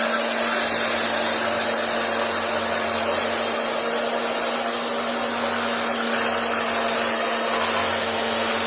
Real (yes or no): yes